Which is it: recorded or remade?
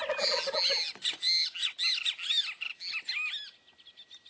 recorded